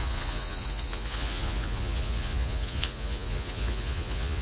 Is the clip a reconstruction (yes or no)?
yes